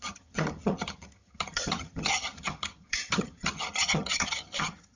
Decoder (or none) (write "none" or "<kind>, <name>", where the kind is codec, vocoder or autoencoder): vocoder, HiFi-GAN